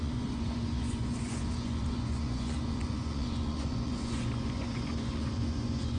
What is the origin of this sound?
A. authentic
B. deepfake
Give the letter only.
B